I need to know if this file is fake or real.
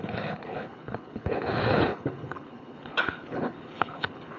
fake